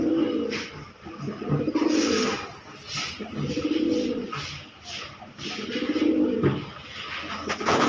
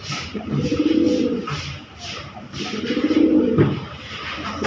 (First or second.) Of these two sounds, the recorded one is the first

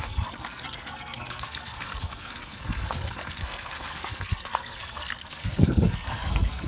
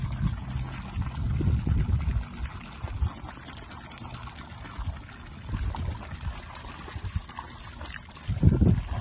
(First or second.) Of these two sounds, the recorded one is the second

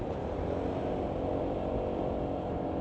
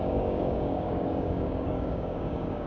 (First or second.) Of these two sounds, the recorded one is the first